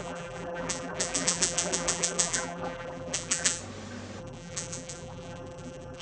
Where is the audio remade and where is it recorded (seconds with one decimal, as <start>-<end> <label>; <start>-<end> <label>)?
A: 0.0-3.6 remade; 3.6-4.2 recorded; 4.2-6.0 remade